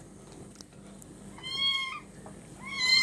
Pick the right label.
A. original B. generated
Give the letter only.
A